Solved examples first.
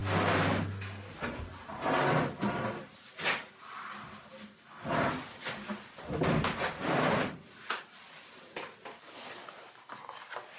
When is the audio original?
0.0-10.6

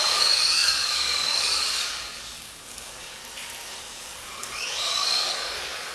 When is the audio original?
3.2-3.8

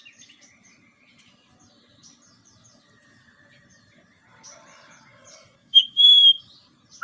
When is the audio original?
0.0-5.6; 6.4-7.0